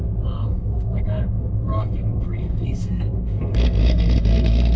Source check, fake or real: fake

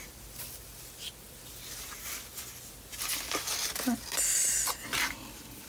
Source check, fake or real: real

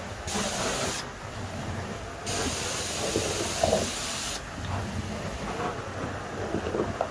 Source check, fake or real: real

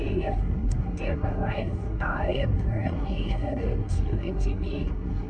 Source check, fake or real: fake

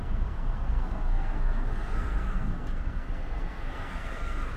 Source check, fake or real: fake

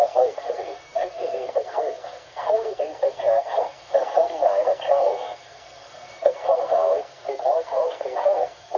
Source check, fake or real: fake